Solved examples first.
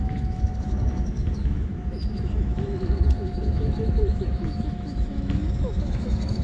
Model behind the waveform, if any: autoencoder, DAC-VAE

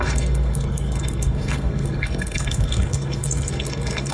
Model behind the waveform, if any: codec, SNAC